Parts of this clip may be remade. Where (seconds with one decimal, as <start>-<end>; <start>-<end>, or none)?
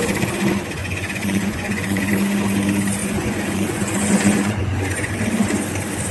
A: 0.8-2.1; 3.0-5.1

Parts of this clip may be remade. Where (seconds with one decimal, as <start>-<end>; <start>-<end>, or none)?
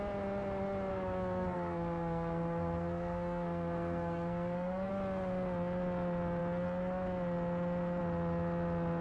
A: 0.9-4.9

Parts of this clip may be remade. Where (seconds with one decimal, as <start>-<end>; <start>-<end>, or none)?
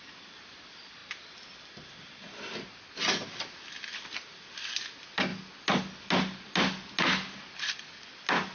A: none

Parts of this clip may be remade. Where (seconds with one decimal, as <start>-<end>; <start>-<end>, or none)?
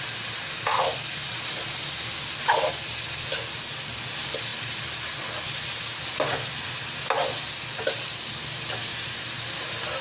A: 7.2-8.6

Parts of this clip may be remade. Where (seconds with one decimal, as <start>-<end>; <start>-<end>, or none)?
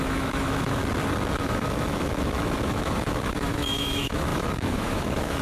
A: 0.0-0.8; 1.4-5.4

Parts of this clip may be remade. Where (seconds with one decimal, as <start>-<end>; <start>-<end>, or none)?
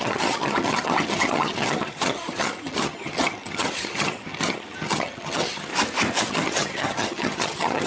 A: 0.0-5.7; 6.3-7.9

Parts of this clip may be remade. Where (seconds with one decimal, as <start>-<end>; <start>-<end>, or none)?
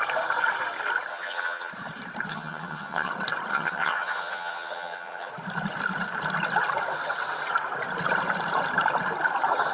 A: 1.1-1.7; 2.3-3.1; 3.5-5.3